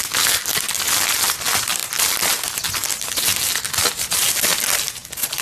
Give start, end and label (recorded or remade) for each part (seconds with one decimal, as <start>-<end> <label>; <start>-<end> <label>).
0.0-5.4 recorded